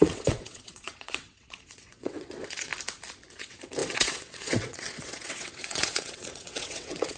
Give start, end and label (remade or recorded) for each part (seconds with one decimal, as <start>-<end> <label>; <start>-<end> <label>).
0.0-2.7 remade; 2.7-3.3 recorded; 3.3-7.2 remade